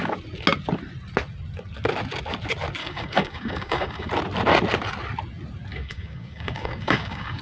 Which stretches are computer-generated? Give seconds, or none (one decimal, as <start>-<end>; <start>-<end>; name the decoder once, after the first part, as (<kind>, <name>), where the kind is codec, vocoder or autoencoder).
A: 2.8-4.1 (codec, DAC); 5.7-7.4

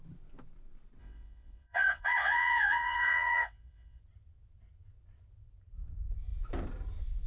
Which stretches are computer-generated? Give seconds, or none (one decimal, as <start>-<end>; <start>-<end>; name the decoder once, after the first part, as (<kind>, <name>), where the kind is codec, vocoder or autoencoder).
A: 1.0-4.0 (vocoder, WaveNeXt)

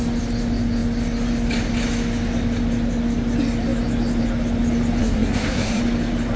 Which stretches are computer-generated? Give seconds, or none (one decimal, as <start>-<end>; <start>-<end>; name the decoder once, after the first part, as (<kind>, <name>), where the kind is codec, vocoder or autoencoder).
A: 5.0-5.8 (codec, SNAC)

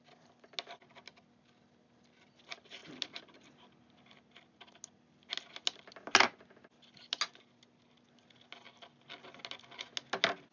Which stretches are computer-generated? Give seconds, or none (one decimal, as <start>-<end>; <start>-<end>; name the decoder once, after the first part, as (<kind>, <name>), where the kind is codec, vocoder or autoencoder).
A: none

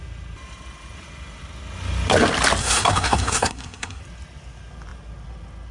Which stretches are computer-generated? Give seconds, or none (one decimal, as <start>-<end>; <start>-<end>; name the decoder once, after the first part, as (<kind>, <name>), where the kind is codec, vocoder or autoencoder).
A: 2.6-4.0 (codec, SNAC)

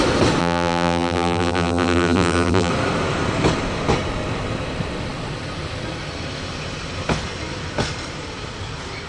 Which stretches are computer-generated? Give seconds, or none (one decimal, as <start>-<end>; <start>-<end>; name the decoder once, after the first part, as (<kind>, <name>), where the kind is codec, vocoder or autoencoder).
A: 0.4-2.7 (vocoder, BigVGAN v2)

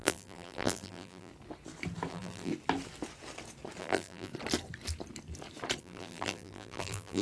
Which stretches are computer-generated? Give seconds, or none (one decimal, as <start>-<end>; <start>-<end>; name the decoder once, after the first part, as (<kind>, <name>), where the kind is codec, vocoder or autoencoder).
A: 0.0-1.3 (vocoder, BigVGAN v2); 2.1-2.5; 3.8-4.3; 5.8-7.2